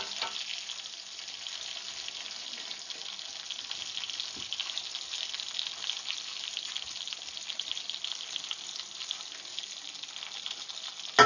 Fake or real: real